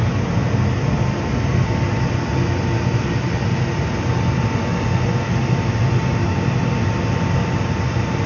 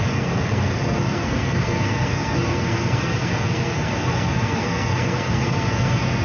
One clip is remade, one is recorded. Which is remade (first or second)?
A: second